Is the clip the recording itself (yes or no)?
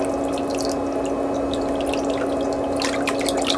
yes